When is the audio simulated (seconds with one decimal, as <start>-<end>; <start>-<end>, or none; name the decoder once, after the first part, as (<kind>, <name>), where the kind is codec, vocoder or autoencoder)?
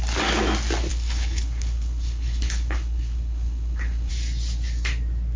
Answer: 0.9-4.1 (codec, HILCodec)